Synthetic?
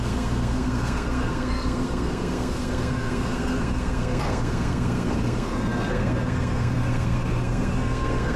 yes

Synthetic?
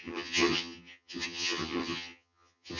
yes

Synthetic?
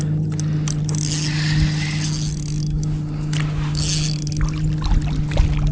no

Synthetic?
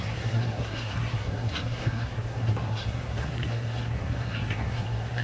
yes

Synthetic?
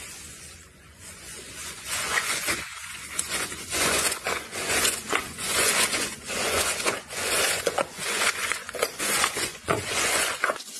yes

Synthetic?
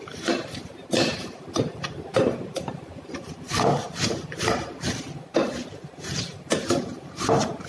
yes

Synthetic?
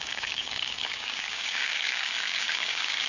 yes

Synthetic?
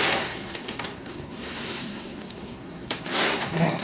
yes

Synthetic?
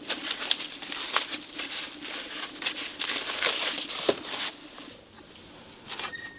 no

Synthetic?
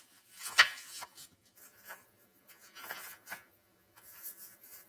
yes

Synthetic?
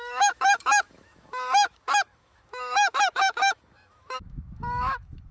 yes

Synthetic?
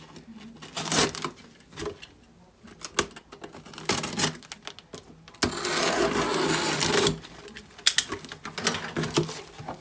no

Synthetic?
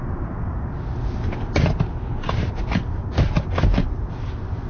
no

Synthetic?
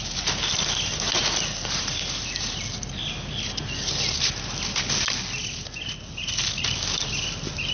no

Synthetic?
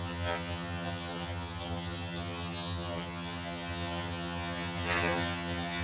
yes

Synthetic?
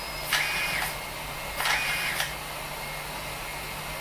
no